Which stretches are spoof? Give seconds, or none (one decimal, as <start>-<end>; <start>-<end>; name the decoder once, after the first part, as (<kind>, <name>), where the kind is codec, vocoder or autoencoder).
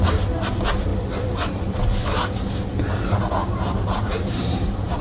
0.9-1.8 (vocoder, BigVGAN v2); 3.4-5.0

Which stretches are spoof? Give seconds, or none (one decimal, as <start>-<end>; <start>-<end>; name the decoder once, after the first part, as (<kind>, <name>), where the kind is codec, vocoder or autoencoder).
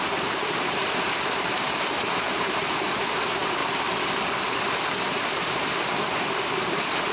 0.0-3.6 (vocoder, BigVGAN v2); 6.4-7.1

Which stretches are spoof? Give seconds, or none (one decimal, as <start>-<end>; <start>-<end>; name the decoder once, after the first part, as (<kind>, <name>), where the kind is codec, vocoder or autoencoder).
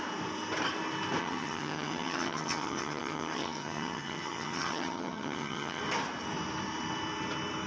1.2-5.8 (vocoder, HiFi-GAN)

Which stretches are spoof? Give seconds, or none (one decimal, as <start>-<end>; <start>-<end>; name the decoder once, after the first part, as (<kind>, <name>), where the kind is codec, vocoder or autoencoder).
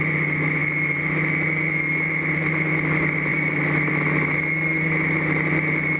3.3-3.9 (vocoder, BigVGAN v2)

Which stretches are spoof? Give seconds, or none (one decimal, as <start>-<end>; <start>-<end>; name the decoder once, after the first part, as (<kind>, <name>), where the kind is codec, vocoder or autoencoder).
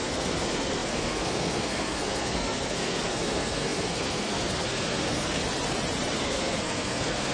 0.0-5.4 (codec, SNAC); 6.2-7.3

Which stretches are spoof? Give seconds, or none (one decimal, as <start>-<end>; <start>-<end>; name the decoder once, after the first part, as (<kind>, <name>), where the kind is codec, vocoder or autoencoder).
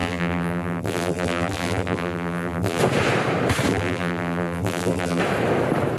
0.0-2.8 (vocoder, BigVGAN v2); 3.7-5.2